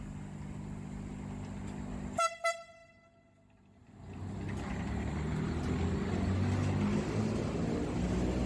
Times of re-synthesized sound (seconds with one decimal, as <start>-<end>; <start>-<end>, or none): none